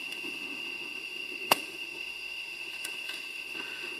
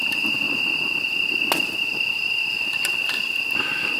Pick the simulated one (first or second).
first